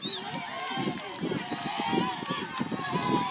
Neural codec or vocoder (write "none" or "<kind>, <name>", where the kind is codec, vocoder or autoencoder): none